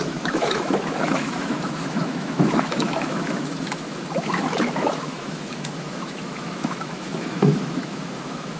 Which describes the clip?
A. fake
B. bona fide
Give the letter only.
A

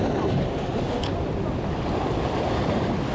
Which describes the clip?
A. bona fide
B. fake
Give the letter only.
A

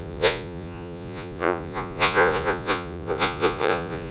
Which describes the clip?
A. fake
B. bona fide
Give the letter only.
A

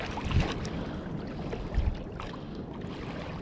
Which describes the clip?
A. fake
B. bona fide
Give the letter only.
B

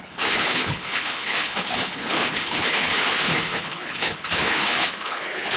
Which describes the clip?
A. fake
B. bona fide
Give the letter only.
A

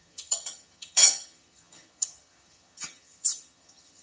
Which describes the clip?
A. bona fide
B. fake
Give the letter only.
B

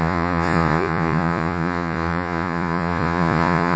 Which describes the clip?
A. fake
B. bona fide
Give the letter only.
A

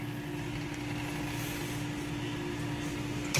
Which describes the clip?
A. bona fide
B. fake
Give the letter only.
A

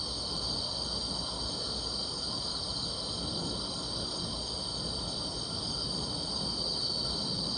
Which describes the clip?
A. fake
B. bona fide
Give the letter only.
A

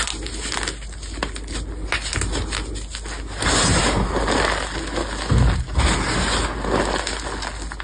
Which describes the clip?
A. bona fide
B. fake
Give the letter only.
A